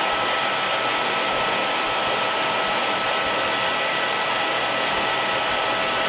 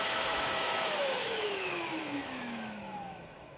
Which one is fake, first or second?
second